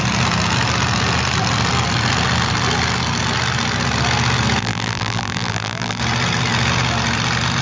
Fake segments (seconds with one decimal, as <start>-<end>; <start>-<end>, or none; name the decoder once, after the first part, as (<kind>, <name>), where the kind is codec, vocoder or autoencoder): 4.6-6.0 (vocoder, BigVGAN v2)